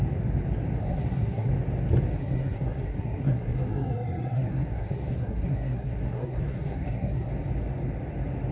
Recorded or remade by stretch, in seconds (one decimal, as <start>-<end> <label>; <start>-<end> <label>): 0.0-0.8 recorded; 0.8-1.5 remade; 1.5-2.2 recorded; 2.2-7.3 remade; 7.3-8.5 recorded